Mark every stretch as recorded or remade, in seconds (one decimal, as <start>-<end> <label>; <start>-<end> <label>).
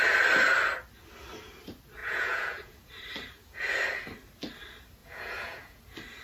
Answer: 0.0-2.0 recorded; 2.0-2.9 remade; 2.9-5.0 recorded; 5.0-5.8 remade; 5.8-6.2 recorded